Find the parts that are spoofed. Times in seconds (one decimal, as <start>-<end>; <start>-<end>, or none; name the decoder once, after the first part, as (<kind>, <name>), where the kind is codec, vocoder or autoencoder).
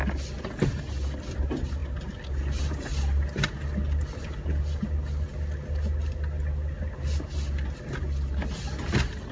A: none